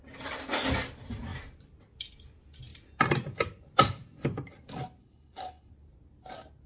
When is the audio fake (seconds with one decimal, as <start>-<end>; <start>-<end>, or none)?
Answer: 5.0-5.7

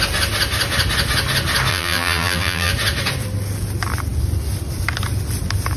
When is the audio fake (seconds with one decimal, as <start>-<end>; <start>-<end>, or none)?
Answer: 1.7-2.7

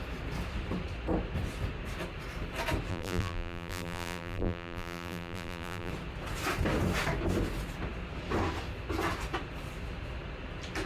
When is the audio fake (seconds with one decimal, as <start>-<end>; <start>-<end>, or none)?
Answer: 2.9-5.9

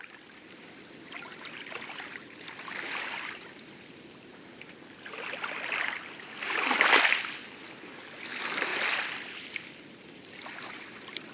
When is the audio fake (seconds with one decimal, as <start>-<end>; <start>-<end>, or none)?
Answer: 0.0-11.3

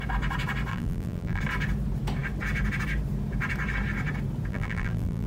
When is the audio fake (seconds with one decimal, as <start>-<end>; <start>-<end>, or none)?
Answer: 0.7-1.4; 4.5-5.3